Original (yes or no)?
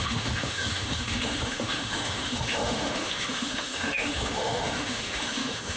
no